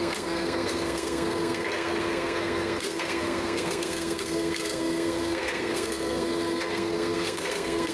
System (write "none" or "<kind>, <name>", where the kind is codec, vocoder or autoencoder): codec, SNAC